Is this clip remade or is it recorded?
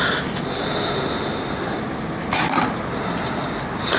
recorded